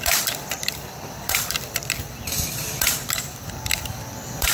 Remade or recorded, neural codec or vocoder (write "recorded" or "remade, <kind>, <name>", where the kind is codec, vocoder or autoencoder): remade, vocoder, BigVGAN v2